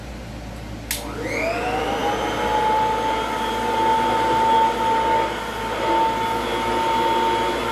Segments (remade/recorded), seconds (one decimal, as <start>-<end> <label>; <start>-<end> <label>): 0.0-7.7 recorded